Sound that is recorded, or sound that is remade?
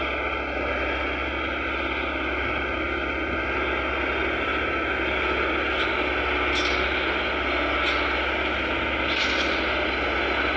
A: recorded